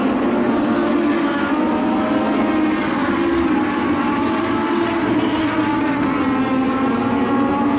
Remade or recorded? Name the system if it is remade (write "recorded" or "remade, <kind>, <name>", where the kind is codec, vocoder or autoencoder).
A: recorded